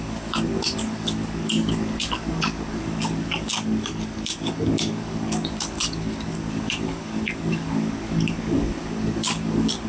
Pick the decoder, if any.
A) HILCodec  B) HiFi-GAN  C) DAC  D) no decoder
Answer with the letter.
C